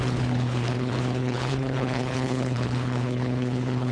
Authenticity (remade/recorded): remade